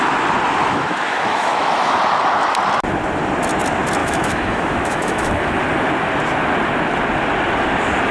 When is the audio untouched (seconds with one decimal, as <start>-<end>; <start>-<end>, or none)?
0.0-0.6; 2.0-4.0; 5.6-8.1